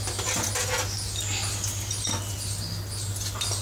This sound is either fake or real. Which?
real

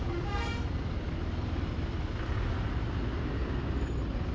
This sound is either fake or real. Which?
real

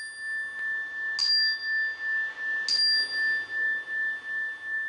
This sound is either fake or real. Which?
real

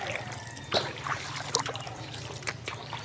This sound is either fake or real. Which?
real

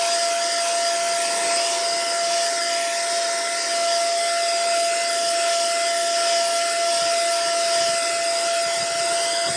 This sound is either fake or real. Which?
real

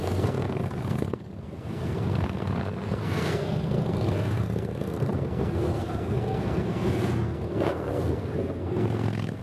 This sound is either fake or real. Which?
fake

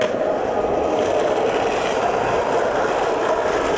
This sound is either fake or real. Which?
real